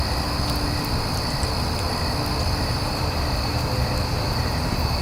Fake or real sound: real